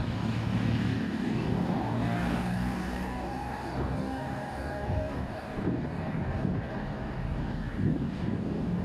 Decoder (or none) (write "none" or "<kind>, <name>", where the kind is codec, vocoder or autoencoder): codec, DAC